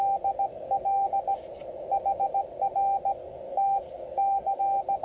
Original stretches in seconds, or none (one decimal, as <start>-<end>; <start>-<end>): 0.0-0.5; 1.1-3.2; 4.6-5.0